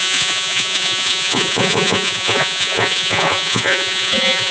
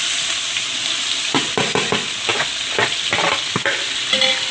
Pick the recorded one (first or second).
second